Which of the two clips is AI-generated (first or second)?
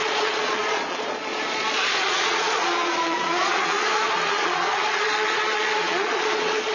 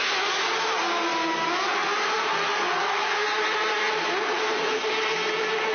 first